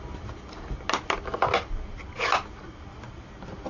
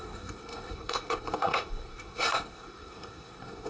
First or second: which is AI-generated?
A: second